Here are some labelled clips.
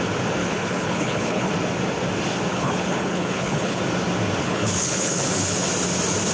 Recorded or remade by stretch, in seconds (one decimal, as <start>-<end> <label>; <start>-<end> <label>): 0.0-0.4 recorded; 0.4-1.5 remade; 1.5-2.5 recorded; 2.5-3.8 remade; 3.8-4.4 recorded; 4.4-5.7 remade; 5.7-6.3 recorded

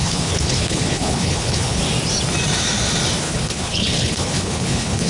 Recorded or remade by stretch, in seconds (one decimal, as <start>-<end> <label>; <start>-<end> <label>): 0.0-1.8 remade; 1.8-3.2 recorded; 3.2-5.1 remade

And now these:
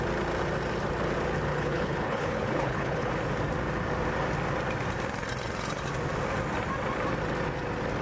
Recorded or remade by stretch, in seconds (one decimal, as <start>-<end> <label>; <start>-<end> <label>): 0.0-1.5 recorded; 1.5-3.1 remade; 3.1-8.0 recorded

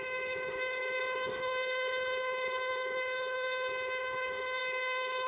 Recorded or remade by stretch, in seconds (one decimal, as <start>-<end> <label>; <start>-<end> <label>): 0.0-5.3 remade

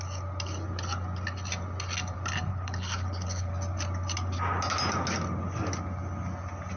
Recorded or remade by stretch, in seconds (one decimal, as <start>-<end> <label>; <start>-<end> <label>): 0.0-2.5 recorded; 2.5-3.5 remade; 3.5-6.8 recorded

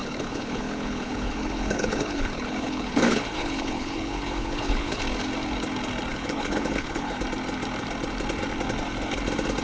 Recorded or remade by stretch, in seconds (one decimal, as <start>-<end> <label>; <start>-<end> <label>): 0.0-5.0 remade; 5.0-6.1 recorded; 6.1-7.2 remade; 7.2-9.6 recorded